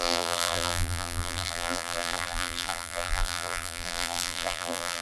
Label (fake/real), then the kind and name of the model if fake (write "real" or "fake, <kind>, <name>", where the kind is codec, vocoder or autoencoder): fake, vocoder, BigVGAN v2